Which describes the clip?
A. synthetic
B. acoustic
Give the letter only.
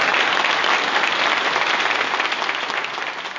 B